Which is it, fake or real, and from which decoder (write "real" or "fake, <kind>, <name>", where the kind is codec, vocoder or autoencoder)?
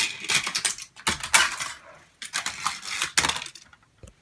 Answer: real